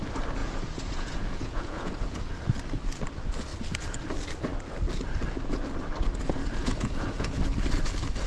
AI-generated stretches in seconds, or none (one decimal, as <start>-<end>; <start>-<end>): 0.4-2.3; 6.4-7.4